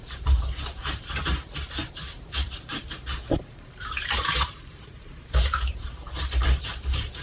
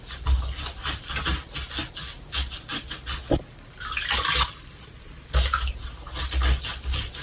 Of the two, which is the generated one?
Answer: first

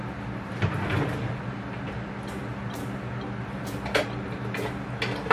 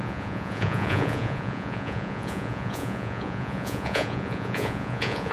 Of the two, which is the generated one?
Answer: second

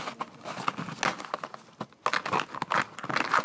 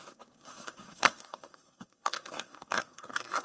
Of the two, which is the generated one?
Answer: second